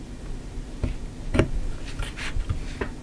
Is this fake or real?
real